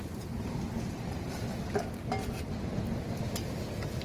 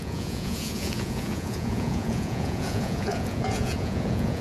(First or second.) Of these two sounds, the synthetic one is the second